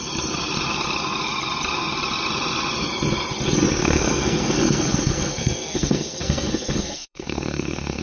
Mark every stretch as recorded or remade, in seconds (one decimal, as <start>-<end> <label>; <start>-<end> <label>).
0.0-3.8 recorded; 3.8-8.0 remade